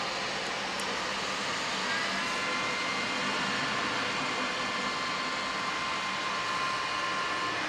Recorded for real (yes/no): yes